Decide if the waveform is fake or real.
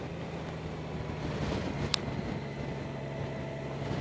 real